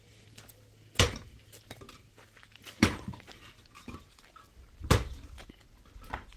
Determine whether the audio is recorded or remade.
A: recorded